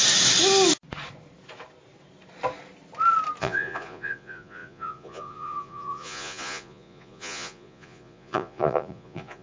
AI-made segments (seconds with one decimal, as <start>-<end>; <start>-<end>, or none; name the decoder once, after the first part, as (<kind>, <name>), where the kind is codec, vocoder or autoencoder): 3.4-9.4 (vocoder, Vocos)